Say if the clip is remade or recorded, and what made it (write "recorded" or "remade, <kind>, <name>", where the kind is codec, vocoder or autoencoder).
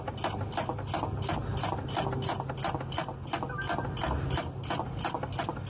recorded